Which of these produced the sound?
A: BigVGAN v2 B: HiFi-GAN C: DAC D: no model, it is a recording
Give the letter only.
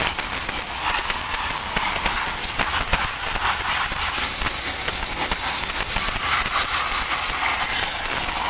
D